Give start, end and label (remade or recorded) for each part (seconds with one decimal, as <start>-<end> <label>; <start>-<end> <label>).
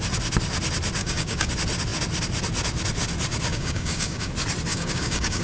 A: 0.0-1.0 recorded; 1.0-1.5 remade; 1.5-3.5 recorded; 3.5-4.3 remade; 4.3-4.7 recorded; 4.7-5.4 remade